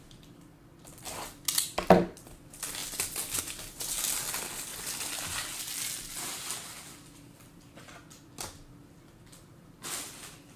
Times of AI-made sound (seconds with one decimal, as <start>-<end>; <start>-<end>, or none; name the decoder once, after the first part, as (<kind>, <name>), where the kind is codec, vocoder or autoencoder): none